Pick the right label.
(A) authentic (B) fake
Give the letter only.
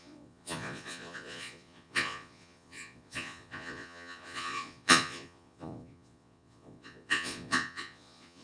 B